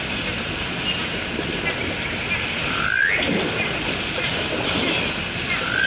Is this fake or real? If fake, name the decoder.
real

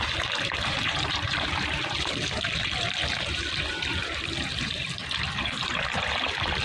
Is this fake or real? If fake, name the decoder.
fake, vocoder, BigVGAN v2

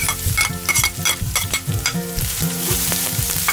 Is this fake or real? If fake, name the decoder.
fake, vocoder, BigVGAN v2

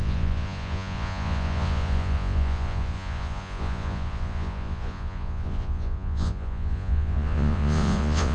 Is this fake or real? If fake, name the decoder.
fake, vocoder, Vocos